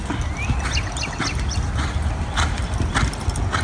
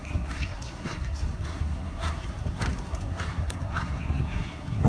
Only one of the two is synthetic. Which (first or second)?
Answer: second